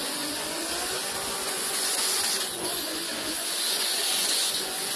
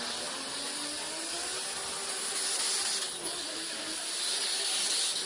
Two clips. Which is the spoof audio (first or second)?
first